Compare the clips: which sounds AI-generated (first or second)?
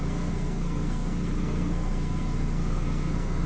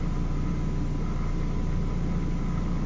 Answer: first